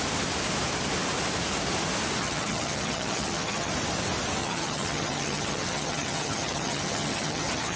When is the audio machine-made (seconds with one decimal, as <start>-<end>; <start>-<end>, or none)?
2.2-3.7; 4.4-7.8